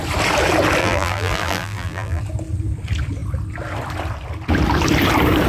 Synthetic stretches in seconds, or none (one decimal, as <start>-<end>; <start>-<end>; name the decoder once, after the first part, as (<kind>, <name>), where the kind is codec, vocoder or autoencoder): 0.8-2.2 (vocoder, BigVGAN v2)